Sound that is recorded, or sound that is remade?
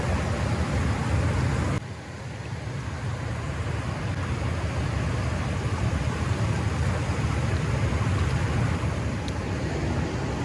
recorded